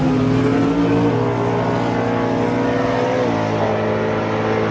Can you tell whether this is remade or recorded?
recorded